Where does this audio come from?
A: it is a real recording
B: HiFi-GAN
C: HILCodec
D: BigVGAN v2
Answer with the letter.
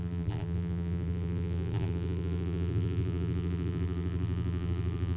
D